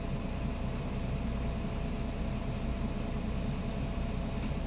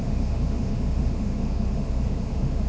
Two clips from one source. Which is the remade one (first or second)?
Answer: second